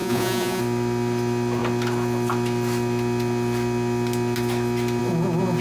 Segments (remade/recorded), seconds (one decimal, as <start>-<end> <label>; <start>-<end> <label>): 0.0-0.6 remade; 0.6-5.6 recorded